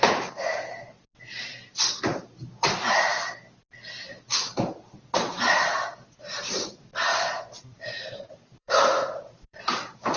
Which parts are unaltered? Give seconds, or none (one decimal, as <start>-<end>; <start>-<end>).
1.0-7.1